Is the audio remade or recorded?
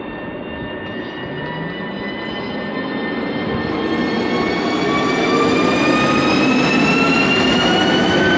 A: recorded